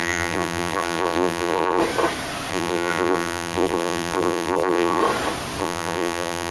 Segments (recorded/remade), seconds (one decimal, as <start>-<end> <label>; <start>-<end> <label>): 0.0-1.8 remade; 1.8-2.5 recorded; 2.5-5.0 remade; 5.0-5.6 recorded; 5.6-6.5 remade